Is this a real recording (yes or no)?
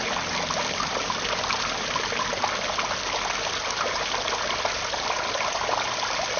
yes